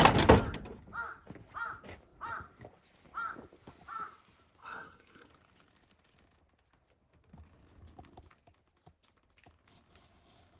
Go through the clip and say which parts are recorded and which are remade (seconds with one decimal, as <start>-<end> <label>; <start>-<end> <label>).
0.0-4.6 recorded; 4.6-5.3 remade; 5.3-10.6 recorded